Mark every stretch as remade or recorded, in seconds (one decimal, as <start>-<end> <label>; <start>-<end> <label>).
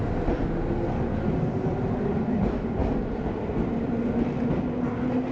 0.0-2.8 recorded; 2.8-3.3 remade; 3.3-5.3 recorded